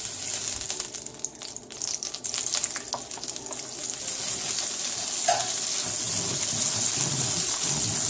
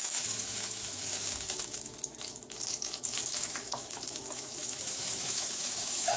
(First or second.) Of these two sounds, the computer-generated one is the second